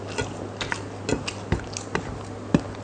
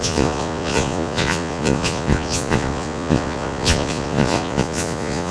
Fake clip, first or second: second